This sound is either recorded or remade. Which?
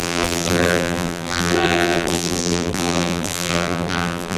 remade